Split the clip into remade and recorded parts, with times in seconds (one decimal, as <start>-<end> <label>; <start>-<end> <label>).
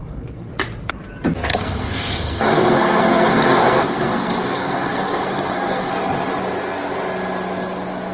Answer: 0.0-0.5 remade; 0.5-1.5 recorded; 1.5-5.9 remade; 5.9-8.1 recorded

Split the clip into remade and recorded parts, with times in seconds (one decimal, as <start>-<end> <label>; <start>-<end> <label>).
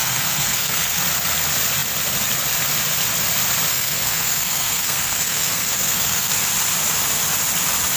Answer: 0.0-1.0 remade; 1.0-3.7 recorded; 3.7-6.3 remade; 6.3-8.0 recorded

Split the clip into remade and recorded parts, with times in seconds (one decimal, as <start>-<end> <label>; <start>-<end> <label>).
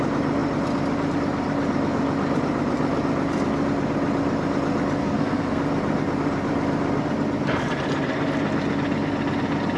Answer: 0.0-5.0 recorded; 5.0-5.6 remade; 5.6-9.8 recorded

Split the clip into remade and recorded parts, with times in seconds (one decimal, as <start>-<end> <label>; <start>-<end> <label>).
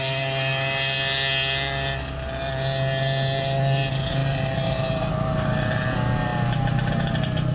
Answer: 0.0-7.5 recorded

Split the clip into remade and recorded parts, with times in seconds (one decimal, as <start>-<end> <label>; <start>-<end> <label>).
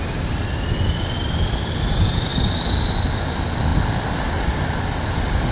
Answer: 0.0-5.5 recorded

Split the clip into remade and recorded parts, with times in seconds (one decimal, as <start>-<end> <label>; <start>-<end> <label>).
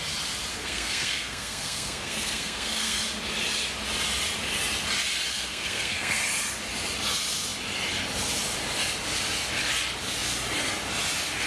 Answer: 0.0-0.5 recorded; 0.5-3.0 remade; 3.0-5.3 recorded; 5.3-6.2 remade; 6.2-11.5 recorded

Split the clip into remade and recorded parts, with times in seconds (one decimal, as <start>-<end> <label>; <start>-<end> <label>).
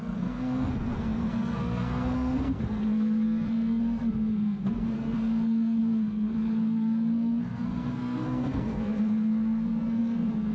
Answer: 0.0-10.5 remade